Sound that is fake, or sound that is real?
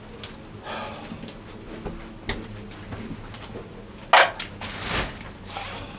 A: real